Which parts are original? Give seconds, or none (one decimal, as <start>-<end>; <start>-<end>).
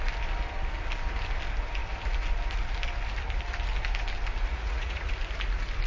0.0-4.4; 5.1-5.9